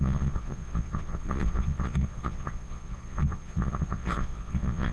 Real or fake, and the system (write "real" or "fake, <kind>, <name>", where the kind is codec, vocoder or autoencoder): fake, vocoder, Vocos